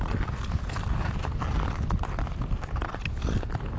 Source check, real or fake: real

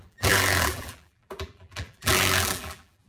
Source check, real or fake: fake